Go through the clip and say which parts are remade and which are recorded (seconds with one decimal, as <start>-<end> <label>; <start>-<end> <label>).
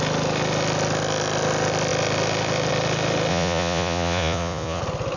0.0-3.3 recorded; 3.3-4.8 remade; 4.8-5.2 recorded